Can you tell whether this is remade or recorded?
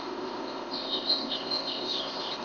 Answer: remade